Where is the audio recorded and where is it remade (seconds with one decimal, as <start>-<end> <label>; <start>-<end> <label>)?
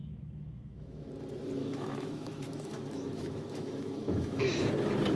0.0-1.1 remade; 1.1-1.6 recorded; 1.6-4.7 remade; 4.7-5.2 recorded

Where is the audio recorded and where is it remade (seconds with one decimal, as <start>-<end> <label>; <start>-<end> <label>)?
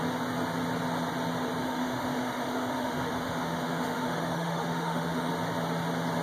0.0-1.6 recorded; 1.6-5.3 remade; 5.3-6.2 recorded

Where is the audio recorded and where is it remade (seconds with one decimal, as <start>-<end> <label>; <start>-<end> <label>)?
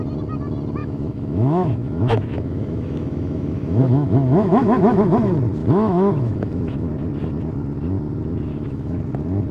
0.0-0.8 recorded; 0.8-5.1 remade; 5.1-5.6 recorded; 5.6-6.9 remade; 6.9-8.5 recorded; 8.5-9.0 remade; 9.0-9.5 recorded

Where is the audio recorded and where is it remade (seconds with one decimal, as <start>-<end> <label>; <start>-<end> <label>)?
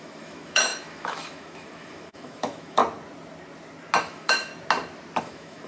0.0-2.8 remade; 2.8-4.0 recorded; 4.0-4.5 remade; 4.5-5.2 recorded; 5.2-5.7 remade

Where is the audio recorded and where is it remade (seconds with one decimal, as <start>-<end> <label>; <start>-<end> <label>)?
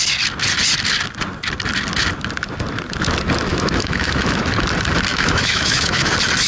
0.0-3.5 recorded; 3.5-4.4 remade; 4.4-5.1 recorded; 5.1-6.1 remade; 6.1-6.5 recorded